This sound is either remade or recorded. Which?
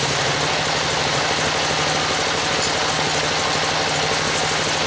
recorded